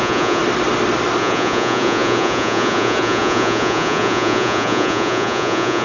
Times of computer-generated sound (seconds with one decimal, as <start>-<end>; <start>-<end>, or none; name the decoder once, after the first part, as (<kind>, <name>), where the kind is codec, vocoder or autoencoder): 0.0-0.4 (vocoder, Vocos); 1.2-5.8